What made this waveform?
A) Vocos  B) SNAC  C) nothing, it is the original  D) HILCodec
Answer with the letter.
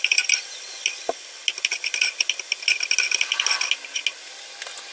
C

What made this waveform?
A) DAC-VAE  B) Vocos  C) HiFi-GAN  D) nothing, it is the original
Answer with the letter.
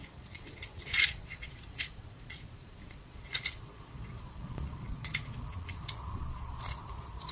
B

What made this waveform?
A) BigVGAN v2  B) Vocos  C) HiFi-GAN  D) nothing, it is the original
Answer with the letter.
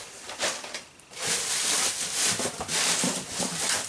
A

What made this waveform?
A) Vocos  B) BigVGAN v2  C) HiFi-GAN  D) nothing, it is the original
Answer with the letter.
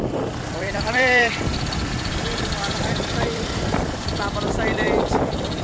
B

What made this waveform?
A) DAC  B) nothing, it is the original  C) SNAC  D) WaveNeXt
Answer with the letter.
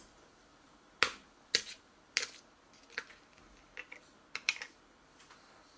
B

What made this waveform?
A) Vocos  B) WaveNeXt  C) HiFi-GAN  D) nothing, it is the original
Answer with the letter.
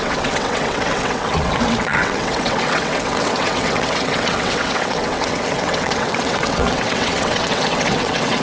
B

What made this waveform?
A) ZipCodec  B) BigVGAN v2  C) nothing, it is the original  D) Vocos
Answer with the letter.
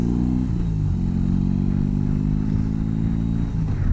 C